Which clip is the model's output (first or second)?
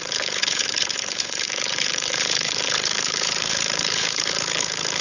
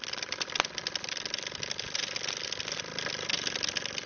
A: first